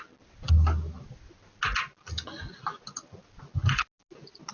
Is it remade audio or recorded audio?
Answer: recorded